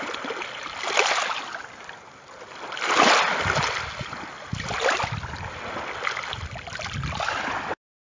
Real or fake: real